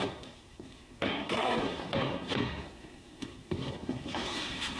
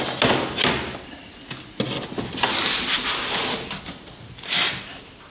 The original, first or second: second